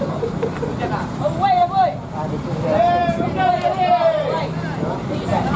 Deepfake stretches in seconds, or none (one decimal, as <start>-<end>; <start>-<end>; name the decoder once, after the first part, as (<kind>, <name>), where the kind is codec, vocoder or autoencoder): none